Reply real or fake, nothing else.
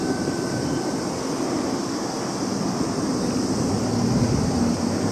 real